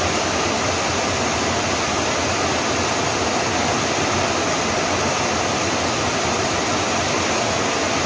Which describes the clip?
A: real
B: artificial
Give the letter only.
A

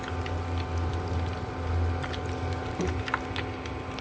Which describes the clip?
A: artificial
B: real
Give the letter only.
B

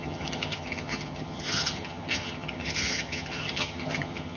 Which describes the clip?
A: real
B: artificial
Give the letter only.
B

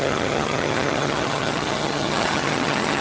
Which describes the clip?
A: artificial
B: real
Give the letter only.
A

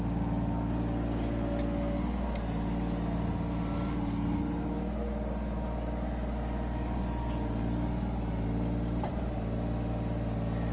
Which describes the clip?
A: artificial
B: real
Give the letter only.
B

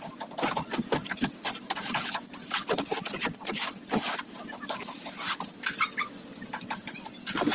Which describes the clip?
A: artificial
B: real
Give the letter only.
B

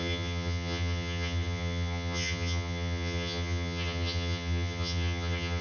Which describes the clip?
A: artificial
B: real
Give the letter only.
A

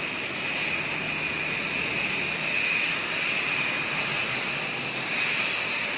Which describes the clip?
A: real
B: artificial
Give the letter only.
A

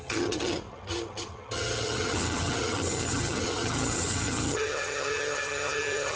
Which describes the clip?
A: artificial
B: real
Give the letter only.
A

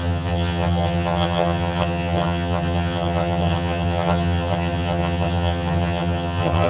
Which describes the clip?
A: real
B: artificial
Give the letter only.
B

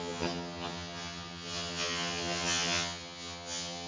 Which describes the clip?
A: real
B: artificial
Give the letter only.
B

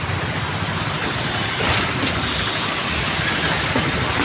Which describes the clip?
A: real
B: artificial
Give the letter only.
A